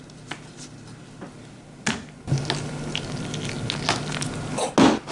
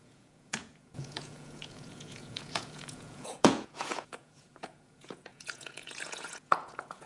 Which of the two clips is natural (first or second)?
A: first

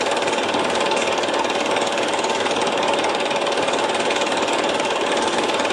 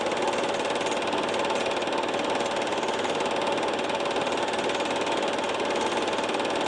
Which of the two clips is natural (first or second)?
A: second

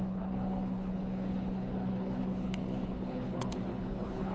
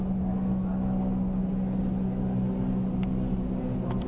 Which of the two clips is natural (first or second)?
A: second